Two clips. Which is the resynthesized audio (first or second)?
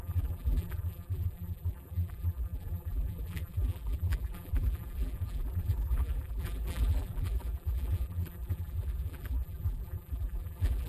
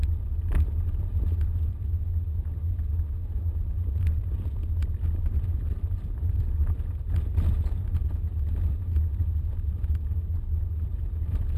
first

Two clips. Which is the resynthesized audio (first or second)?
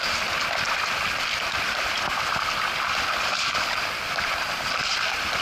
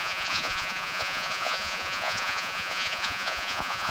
second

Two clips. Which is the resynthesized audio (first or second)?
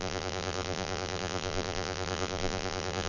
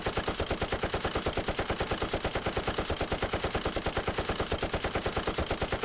first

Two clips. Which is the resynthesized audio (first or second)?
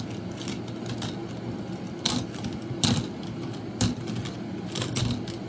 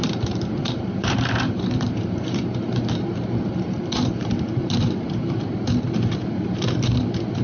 second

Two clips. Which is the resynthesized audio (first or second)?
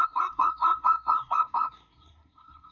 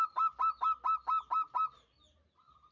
first